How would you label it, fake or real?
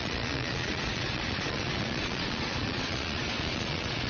fake